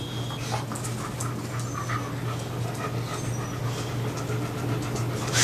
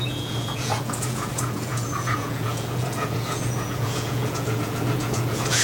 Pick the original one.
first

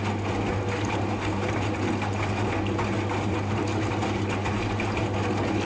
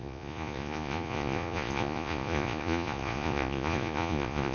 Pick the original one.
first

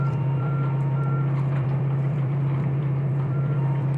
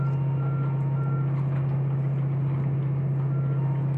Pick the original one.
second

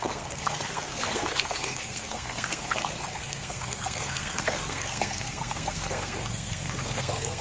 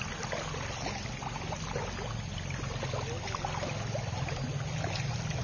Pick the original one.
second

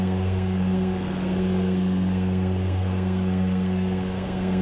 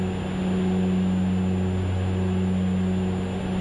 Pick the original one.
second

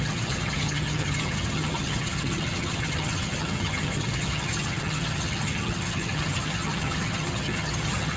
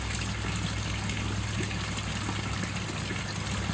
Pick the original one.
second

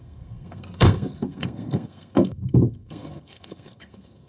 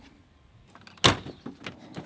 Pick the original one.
second